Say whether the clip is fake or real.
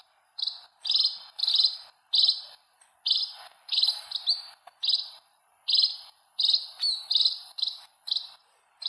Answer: real